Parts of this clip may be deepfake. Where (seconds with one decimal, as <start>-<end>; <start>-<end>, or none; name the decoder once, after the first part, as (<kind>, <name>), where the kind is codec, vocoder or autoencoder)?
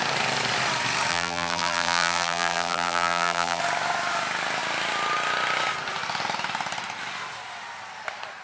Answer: 1.1-3.6 (vocoder, BigVGAN v2)